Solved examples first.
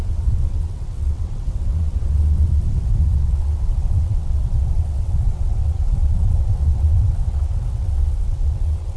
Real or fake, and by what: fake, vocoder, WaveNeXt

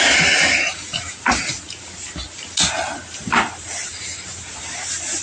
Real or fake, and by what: real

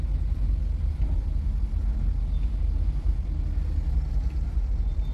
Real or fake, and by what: real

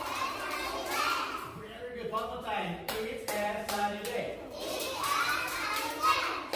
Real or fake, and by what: fake, vocoder, BigVGAN v2